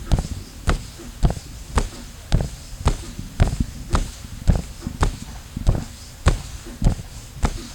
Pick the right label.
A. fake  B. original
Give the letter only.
B